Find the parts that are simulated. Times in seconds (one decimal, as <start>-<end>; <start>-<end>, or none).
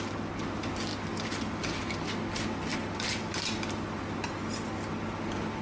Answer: none